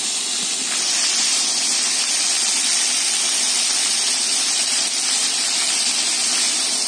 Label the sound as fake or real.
real